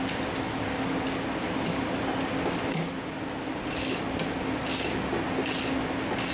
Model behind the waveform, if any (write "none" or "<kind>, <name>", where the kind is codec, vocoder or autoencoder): none